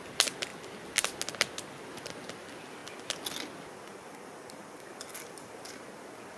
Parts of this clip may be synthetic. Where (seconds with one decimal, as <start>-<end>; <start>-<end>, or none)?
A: none